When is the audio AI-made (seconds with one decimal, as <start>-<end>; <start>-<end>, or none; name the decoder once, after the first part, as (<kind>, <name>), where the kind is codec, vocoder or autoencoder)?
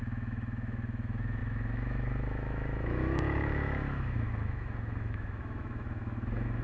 0.0-6.6 (autoencoder, DAC-VAE)